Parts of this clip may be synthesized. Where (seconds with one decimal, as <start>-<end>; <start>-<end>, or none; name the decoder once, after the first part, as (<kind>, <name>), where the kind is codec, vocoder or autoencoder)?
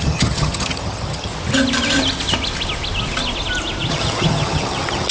0.0-1.3 (vocoder, HiFi-GAN); 3.9-5.1